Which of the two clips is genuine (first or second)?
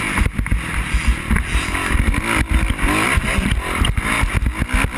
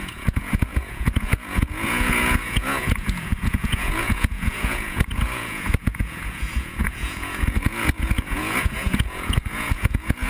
first